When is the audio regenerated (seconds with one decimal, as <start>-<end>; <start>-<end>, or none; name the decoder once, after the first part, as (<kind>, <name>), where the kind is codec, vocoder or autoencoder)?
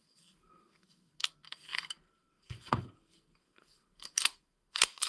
0.0-5.1 (codec, SNAC)